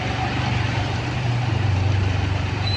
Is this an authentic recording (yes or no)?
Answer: no